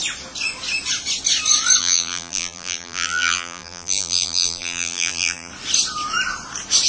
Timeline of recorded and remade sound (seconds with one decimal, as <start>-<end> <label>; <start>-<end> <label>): 0.0-1.8 recorded; 1.8-5.5 remade; 5.5-6.9 recorded